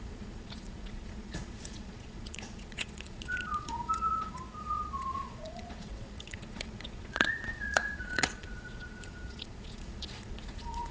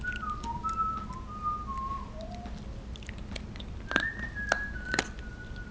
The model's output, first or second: first